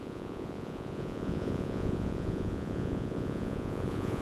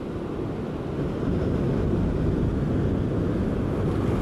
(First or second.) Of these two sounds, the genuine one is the second